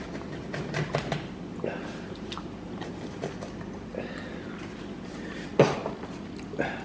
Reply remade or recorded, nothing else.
recorded